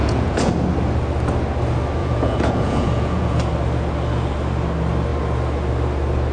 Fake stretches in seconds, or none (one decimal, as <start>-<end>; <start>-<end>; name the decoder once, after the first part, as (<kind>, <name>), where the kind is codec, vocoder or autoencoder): 0.0-0.5 (vocoder, Vocos); 2.0-3.4